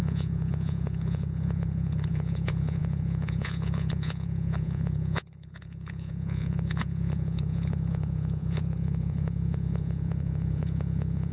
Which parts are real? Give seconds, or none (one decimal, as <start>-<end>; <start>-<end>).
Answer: none